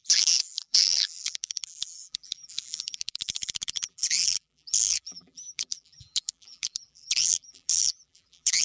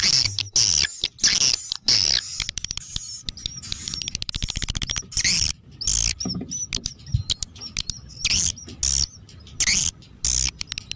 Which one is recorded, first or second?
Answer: second